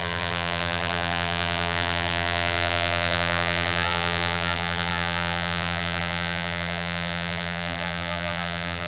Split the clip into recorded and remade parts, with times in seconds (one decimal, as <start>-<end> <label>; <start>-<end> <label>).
0.0-8.9 remade